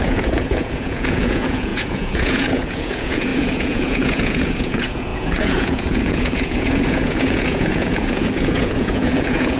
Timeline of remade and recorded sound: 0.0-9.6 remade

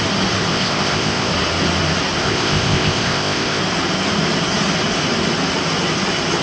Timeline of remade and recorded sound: 0.0-0.5 recorded; 0.5-1.3 remade; 1.3-2.2 recorded; 2.2-3.6 remade; 3.6-6.4 recorded

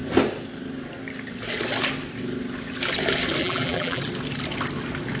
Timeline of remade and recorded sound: 0.0-3.4 recorded; 3.4-4.0 remade; 4.0-5.2 recorded

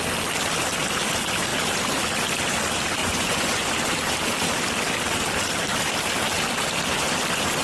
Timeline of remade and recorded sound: 0.0-3.0 recorded; 3.0-3.7 remade; 3.7-7.6 recorded